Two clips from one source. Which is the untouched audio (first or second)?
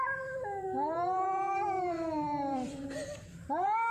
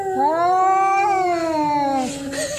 second